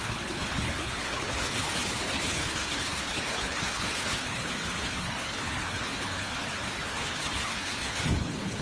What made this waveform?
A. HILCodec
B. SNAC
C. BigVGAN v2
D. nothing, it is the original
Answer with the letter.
A